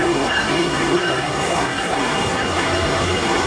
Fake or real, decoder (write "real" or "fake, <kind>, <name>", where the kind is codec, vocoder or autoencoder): fake, codec, SNAC